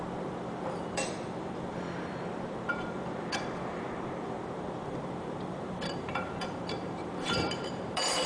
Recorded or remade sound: remade